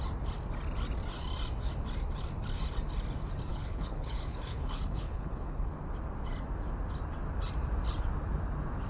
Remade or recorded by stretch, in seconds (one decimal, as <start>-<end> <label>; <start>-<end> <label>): 0.0-3.5 recorded; 3.5-5.7 remade; 5.7-8.9 recorded